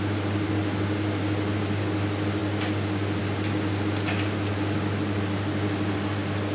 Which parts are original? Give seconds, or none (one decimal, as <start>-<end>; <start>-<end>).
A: 0.0-6.5